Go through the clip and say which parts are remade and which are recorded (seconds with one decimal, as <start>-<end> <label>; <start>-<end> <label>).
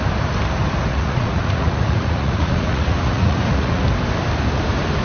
0.0-0.9 recorded; 0.9-3.8 remade; 3.8-5.0 recorded